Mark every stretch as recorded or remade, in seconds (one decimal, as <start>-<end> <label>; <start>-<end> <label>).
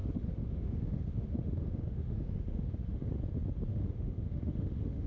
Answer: 0.0-3.1 remade; 3.1-3.7 recorded; 3.7-5.1 remade